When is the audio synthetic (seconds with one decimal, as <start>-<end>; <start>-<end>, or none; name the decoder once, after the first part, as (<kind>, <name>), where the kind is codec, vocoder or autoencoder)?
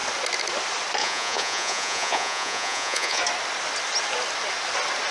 1.0-3.2 (vocoder, Vocos)